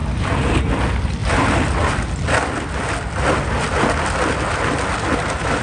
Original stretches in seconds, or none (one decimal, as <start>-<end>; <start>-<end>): 0.6-5.6